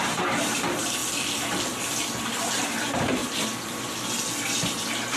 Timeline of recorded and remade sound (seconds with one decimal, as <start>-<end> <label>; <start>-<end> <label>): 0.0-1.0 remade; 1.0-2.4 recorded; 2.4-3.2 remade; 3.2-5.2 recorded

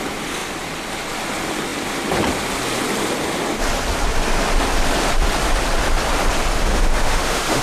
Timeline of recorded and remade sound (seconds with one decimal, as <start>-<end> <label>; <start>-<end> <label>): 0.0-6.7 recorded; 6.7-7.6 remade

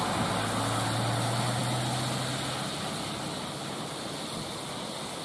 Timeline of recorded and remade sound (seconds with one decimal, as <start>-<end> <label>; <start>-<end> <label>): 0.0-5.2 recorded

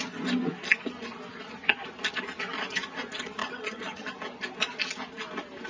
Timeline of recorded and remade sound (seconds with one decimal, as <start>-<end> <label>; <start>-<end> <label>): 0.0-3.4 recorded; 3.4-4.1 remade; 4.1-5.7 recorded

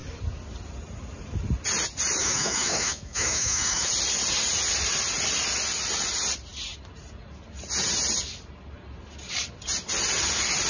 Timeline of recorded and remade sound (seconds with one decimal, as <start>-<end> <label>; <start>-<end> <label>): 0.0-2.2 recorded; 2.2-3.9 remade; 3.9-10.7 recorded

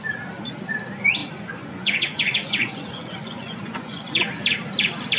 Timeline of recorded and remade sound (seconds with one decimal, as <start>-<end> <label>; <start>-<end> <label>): 0.0-1.2 recorded; 1.2-4.3 remade; 4.3-5.2 recorded

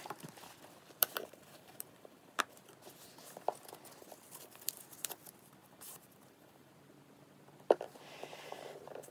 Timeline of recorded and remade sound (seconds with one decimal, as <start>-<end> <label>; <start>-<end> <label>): 0.0-1.0 recorded; 1.0-2.4 remade; 2.4-5.6 recorded; 5.6-6.7 remade; 6.7-9.1 recorded